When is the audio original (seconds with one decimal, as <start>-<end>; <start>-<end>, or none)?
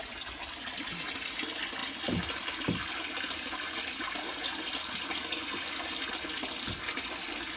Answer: 0.0-7.6